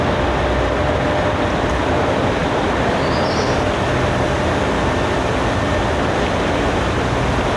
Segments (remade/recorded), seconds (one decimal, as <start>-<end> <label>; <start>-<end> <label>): 0.0-7.6 recorded